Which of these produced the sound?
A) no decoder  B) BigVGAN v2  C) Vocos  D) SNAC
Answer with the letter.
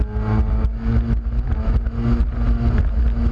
A